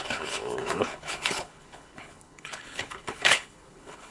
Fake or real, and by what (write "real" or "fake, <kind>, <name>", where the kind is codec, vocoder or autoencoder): fake, codec, HILCodec